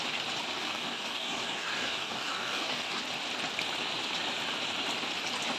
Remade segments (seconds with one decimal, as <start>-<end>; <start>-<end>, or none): 0.5-3.0